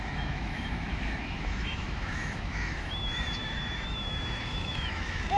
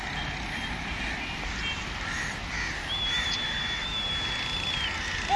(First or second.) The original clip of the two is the second